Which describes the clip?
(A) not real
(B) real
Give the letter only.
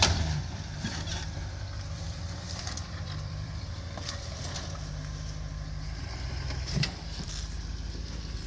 A